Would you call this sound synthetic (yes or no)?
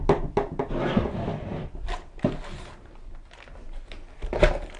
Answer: no